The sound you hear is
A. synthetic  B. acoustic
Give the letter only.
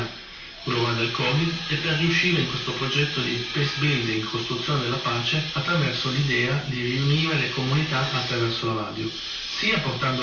B